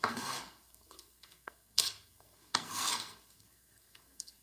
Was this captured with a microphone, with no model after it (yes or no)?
no